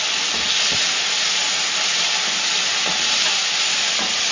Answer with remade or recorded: recorded